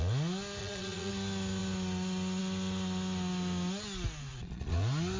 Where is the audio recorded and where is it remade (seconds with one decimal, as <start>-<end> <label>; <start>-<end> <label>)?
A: 0.0-0.6 recorded; 0.6-1.1 remade; 1.1-4.3 recorded; 4.3-4.8 remade; 4.8-5.2 recorded